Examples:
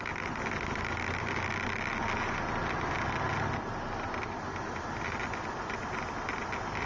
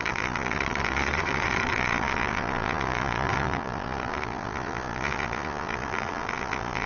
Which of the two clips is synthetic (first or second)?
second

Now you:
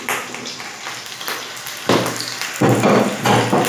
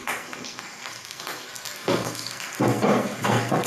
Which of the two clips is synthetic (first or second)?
second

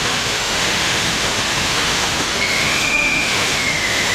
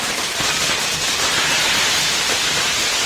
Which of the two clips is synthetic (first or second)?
first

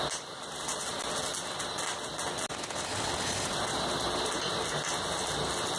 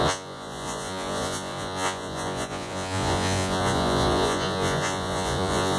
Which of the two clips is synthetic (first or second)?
second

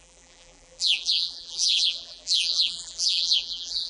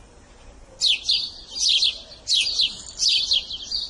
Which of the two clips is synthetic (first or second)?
first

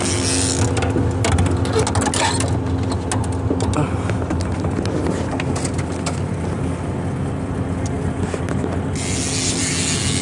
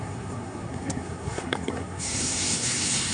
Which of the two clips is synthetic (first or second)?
second